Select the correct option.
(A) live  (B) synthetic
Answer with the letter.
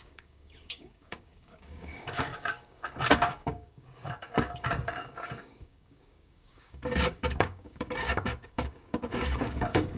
B